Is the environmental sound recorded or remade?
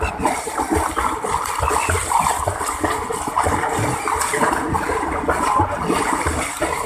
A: recorded